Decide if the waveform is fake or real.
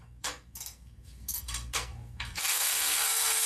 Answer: fake